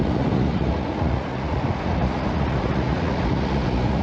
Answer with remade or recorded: remade